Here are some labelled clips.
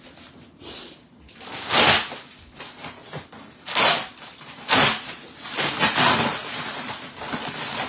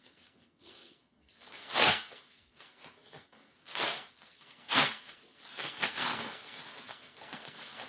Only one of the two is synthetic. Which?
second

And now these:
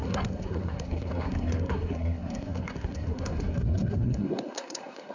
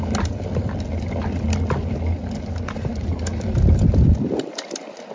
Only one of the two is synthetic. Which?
first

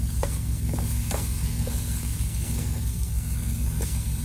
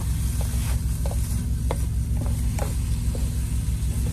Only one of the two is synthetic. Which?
first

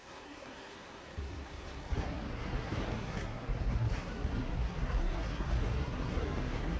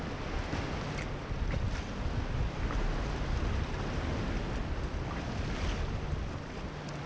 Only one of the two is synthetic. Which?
first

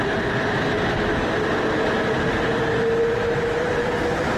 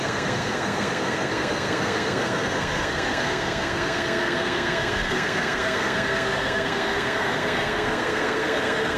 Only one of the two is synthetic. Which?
second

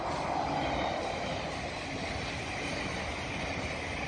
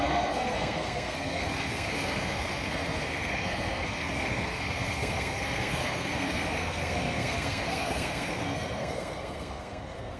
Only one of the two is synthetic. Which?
second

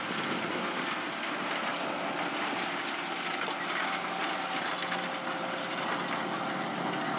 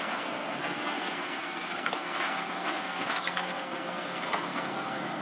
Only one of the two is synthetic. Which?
second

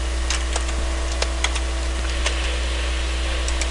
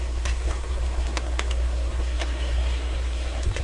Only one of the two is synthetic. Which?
second